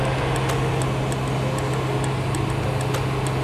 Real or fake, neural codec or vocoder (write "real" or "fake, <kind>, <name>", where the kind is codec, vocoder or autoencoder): real